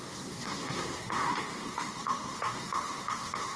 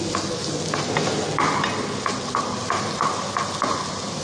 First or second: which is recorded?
second